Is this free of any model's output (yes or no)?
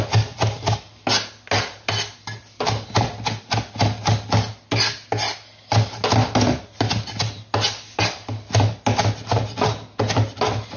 yes